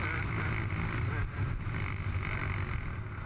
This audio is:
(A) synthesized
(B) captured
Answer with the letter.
B